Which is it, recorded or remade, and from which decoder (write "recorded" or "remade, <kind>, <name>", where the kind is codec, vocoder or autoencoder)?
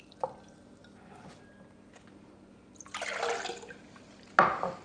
recorded